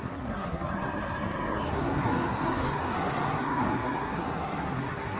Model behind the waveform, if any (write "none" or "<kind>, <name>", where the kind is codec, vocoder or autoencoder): codec, SNAC